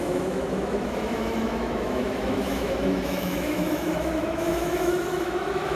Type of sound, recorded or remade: remade